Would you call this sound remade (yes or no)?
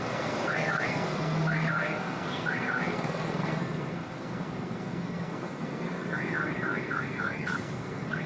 yes